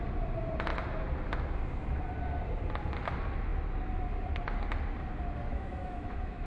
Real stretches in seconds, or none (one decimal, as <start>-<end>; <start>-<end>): 0.0-5.5